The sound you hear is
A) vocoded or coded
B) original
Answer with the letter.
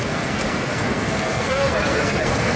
A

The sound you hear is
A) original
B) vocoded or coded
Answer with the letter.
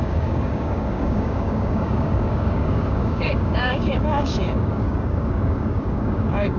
B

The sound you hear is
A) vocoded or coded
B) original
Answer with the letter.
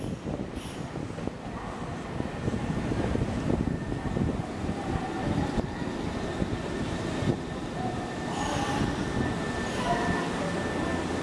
B